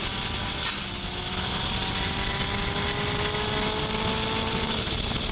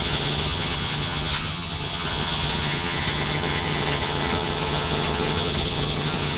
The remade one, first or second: second